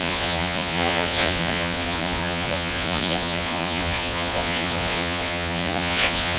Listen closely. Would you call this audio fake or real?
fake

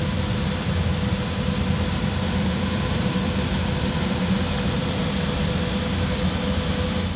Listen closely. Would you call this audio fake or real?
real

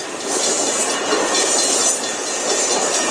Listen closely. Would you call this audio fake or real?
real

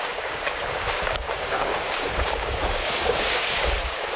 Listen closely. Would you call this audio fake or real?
fake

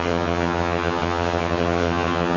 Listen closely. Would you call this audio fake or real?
fake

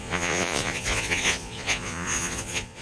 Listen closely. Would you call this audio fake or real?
fake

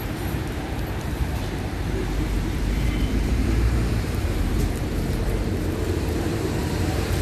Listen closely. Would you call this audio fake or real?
fake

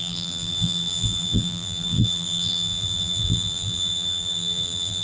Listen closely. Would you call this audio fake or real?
fake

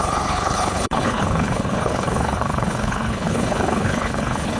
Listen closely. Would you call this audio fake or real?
fake